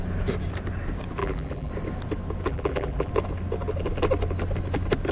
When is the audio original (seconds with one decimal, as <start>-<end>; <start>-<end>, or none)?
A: 0.0-1.2; 1.7-2.5; 3.1-5.1